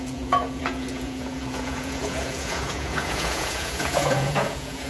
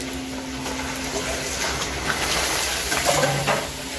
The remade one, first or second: first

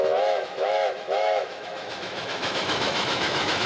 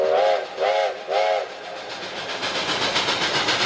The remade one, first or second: first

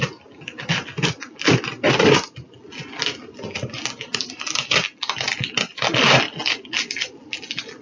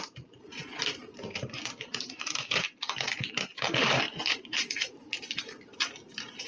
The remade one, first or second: second